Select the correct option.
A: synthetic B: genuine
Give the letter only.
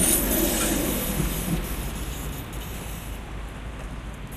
B